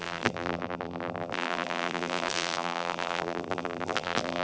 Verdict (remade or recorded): remade